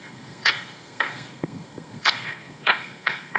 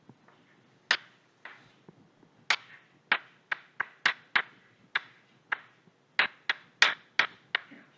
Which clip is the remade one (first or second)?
first